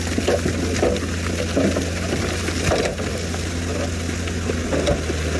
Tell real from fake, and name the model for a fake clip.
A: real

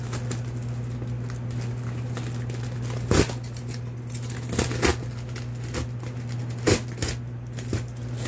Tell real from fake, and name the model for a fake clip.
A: real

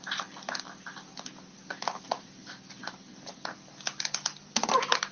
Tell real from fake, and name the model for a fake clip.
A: real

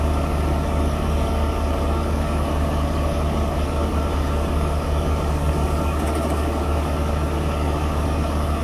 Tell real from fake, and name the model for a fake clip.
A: fake, codec, DAC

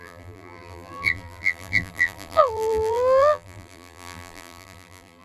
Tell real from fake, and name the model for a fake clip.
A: fake, vocoder, BigVGAN v2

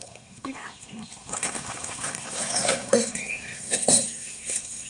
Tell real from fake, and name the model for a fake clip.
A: fake, codec, SNAC